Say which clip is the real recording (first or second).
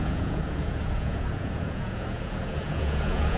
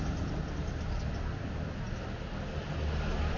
second